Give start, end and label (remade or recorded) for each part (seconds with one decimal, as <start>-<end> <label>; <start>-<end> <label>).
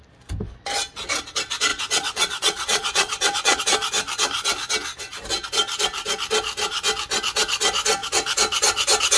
0.0-1.7 recorded; 1.7-3.6 remade; 3.6-9.2 recorded